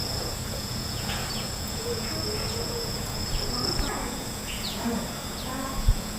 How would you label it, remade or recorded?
remade